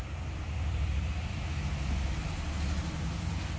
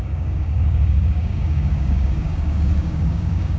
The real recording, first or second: first